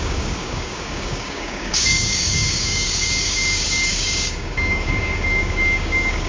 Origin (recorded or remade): remade